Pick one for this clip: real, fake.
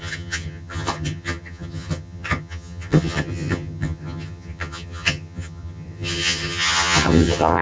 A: fake